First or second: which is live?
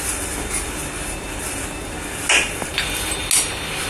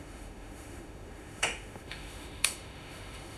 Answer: first